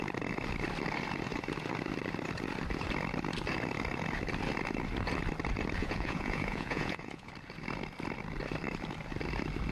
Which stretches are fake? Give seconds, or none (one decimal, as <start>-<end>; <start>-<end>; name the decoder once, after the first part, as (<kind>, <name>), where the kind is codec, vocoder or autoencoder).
5.8-7.3 (vocoder, Vocos)